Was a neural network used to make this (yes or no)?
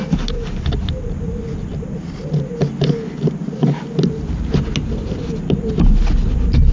no